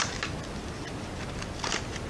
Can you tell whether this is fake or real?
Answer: real